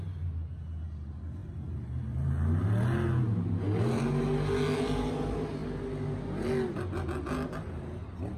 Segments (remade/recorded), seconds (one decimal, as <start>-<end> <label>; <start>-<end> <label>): 0.0-8.4 recorded